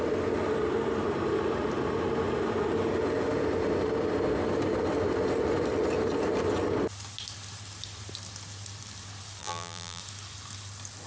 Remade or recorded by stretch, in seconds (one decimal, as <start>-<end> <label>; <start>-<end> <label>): 0.0-9.4 recorded; 9.4-10.0 remade; 10.0-11.1 recorded

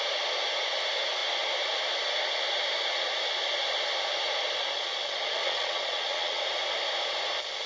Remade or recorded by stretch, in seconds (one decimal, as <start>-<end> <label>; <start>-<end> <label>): 0.0-5.4 recorded; 5.4-6.4 remade; 6.4-7.7 recorded

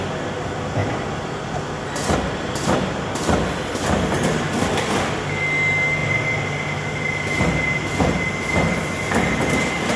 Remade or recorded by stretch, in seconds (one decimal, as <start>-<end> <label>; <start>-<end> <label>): 0.0-10.0 recorded

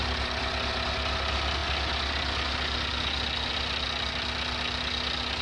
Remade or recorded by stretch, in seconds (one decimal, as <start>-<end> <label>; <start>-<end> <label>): 0.0-5.4 recorded

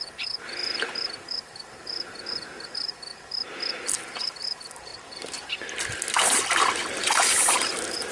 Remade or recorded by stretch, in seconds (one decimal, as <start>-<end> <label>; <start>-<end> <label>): 0.0-3.1 remade; 3.1-4.2 recorded; 4.2-4.9 remade; 4.9-6.8 recorded; 6.8-8.1 remade

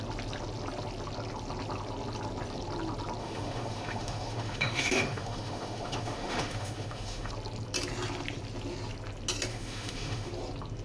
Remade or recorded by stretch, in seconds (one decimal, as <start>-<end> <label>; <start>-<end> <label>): 0.0-3.2 recorded; 3.2-7.3 remade; 7.3-9.5 recorded; 9.5-10.3 remade; 10.3-10.8 recorded

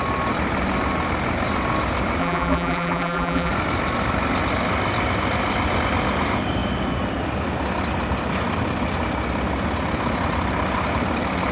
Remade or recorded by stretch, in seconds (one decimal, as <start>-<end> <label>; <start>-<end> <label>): 0.0-2.2 recorded; 2.2-3.5 remade; 3.5-11.5 recorded